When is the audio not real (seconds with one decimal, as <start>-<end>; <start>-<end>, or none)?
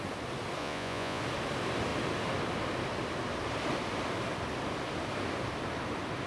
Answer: 0.6-1.2